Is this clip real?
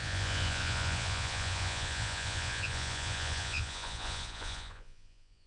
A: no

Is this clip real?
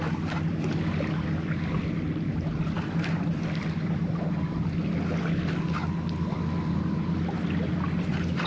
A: yes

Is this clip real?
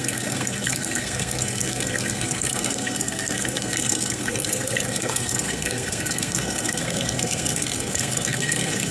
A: no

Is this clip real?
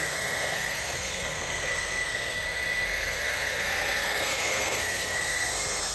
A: no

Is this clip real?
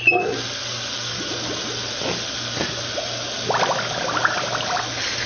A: yes